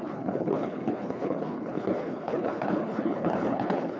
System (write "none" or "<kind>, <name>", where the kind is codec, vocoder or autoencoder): codec, HILCodec